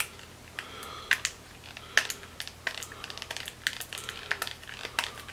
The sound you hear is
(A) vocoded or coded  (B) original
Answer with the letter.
B